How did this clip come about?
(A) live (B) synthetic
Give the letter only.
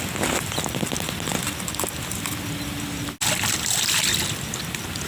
A